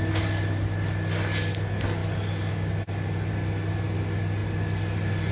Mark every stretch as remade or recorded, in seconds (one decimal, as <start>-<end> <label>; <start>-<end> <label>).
0.0-5.3 recorded